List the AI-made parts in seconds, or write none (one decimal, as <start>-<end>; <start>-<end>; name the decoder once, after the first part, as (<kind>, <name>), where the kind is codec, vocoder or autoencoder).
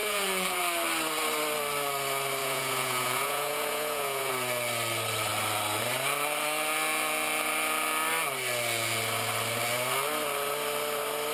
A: 0.0-0.6 (vocoder, Vocos); 2.4-4.3